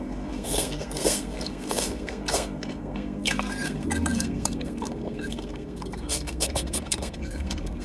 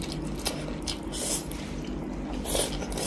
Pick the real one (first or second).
second